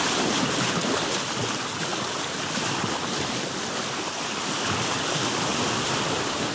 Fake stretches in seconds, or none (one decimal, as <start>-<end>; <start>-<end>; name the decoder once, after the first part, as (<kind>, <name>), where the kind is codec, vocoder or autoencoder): none